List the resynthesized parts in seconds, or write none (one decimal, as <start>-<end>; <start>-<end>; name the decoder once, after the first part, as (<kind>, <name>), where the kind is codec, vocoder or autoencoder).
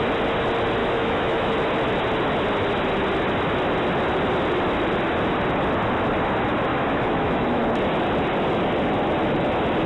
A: 0.8-1.5 (autoencoder, DAC-VAE); 6.7-7.6